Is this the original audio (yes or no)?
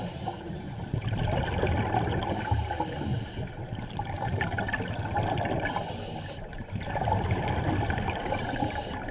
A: yes